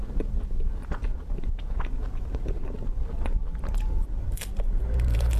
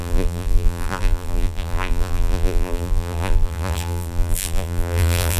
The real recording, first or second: first